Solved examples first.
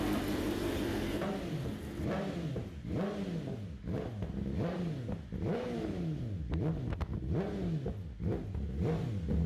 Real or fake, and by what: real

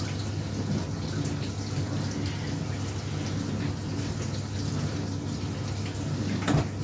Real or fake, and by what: real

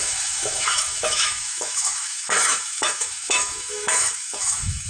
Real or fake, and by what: fake, autoencoder, DAC-VAE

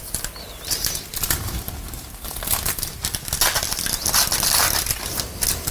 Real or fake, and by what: real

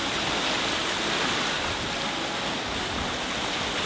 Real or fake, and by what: real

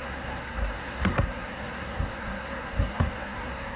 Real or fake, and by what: fake, codec, SNAC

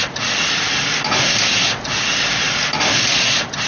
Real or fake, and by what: real